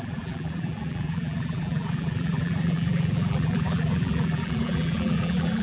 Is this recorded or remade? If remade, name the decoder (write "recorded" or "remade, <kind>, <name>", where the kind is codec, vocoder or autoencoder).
remade, vocoder, BigVGAN v2